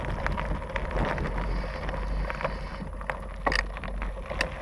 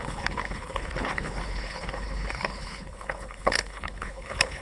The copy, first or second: second